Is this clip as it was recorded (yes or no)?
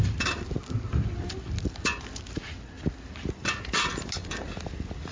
yes